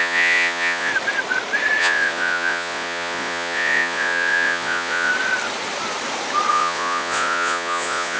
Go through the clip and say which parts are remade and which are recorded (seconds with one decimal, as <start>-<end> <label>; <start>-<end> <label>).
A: 0.0-0.9 remade; 0.9-1.8 recorded; 1.8-5.1 remade; 5.1-6.5 recorded; 6.5-8.2 remade